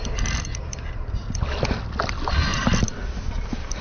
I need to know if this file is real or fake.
real